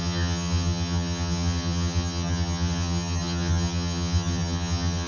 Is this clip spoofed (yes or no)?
yes